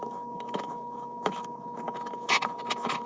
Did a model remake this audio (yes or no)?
yes